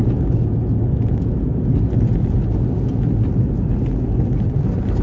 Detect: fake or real real